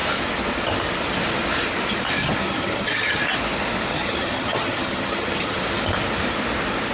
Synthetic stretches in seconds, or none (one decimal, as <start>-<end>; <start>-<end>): 2.2-3.2; 3.9-5.6